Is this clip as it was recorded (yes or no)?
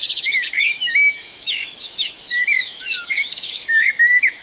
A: no